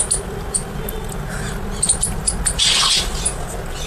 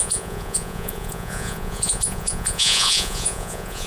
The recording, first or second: first